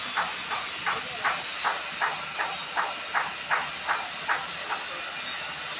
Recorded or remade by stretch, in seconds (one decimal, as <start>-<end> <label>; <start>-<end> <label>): 0.0-5.8 recorded